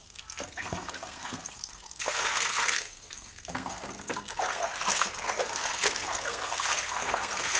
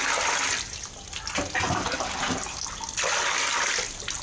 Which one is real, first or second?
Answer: second